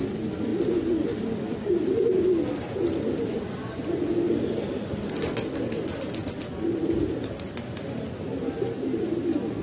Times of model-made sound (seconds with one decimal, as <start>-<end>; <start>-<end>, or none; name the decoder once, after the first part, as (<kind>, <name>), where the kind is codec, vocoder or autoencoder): none